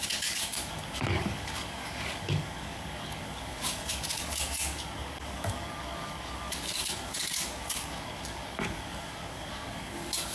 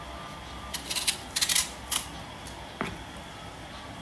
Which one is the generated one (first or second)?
first